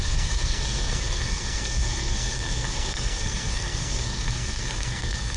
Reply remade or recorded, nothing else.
remade